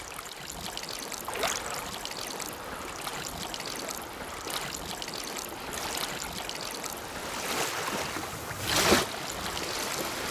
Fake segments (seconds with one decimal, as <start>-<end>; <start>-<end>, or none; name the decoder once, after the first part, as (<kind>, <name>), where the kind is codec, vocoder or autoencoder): none